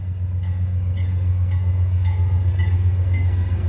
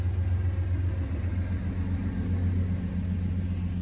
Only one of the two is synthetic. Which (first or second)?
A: first